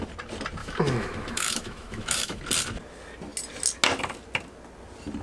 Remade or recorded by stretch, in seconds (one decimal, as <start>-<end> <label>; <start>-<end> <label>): 0.0-0.6 recorded; 0.6-2.4 remade; 2.4-5.2 recorded